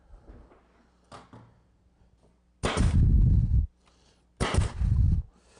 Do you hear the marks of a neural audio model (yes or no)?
no